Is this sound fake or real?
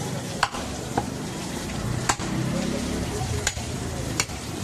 fake